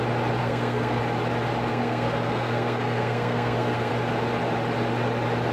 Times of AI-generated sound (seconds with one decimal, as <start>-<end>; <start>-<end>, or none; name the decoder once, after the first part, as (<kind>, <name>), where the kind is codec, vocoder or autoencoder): 0.4-1.0 (codec, SNAC); 1.7-3.9